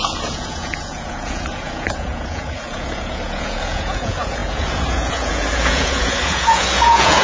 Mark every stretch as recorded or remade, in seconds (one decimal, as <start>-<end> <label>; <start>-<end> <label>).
0.0-7.2 remade